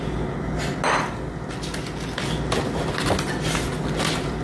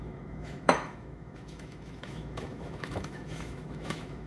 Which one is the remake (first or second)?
second